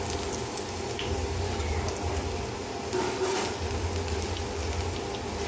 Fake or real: real